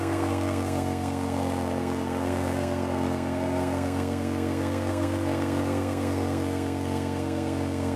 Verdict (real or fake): fake